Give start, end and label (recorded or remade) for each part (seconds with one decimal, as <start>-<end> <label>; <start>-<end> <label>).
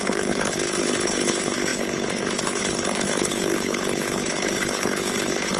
0.0-5.6 remade